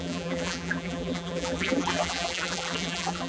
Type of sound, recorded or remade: remade